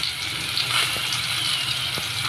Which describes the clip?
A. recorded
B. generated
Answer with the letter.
A